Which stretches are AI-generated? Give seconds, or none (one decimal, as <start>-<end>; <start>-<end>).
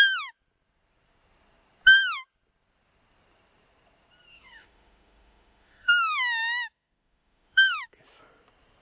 4.3-8.0